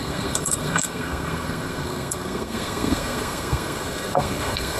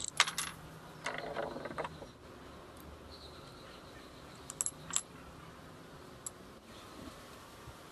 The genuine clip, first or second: second